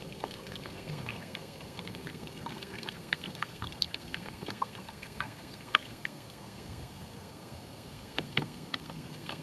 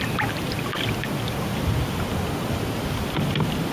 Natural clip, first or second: second